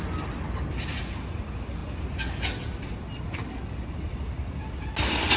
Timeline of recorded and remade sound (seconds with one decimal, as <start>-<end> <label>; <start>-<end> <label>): 0.0-5.4 recorded